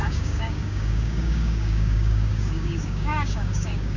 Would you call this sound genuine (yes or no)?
no